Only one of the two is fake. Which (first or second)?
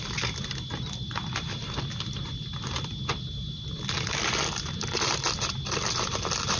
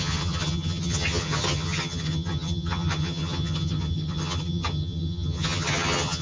second